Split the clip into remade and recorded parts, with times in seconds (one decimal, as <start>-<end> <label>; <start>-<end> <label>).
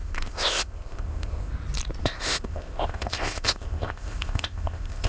0.0-1.5 remade; 1.5-2.0 recorded; 2.0-5.1 remade